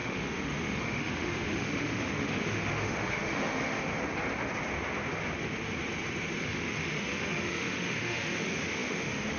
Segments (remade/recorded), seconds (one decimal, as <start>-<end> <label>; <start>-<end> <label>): 0.0-4.0 remade; 4.0-6.4 recorded; 6.4-9.4 remade